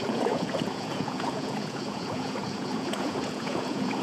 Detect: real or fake fake